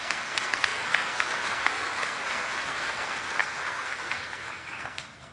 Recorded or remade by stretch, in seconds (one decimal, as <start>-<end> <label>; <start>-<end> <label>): 0.0-5.3 remade